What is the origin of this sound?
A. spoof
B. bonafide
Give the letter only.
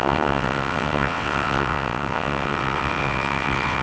A